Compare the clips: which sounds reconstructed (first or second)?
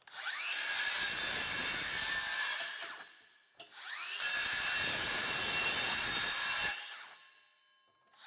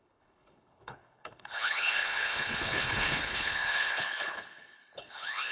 second